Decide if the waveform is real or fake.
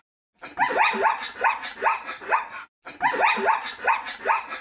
real